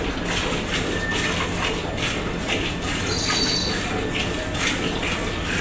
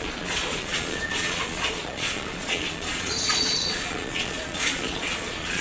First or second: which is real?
first